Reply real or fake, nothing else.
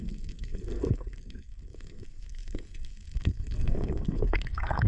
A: fake